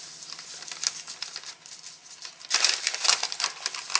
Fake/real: real